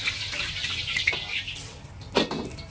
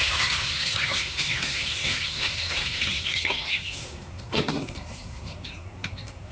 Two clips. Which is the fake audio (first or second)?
second